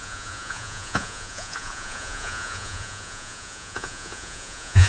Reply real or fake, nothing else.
fake